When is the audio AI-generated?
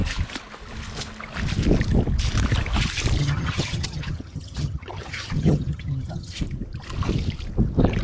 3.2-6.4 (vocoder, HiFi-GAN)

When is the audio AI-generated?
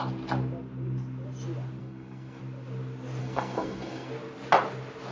1.8-2.4 (codec, SNAC); 3.2-4.1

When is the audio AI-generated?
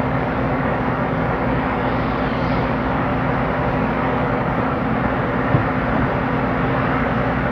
0.0-3.1 (codec, DAC); 3.7-4.8; 6.7-7.5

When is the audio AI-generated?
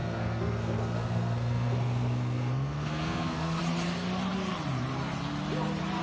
0.0-3.6 (codec, SNAC)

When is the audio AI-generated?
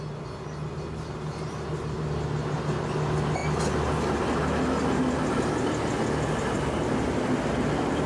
none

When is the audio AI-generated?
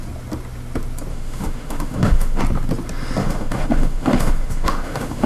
1.1-2.4 (autoencoder, DAC-VAE); 3.2-5.3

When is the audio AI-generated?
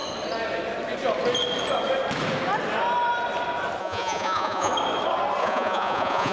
3.8-4.7 (vocoder, Vocos); 5.4-6.3